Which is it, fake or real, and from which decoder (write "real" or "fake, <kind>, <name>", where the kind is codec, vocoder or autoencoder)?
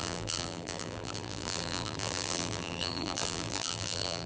fake, vocoder, BigVGAN v2